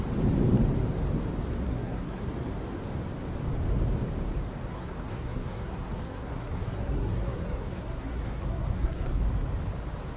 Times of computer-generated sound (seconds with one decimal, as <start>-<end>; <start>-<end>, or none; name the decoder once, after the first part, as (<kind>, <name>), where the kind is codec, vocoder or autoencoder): 1.6-2.3 (codec, SNAC); 4.7-9.2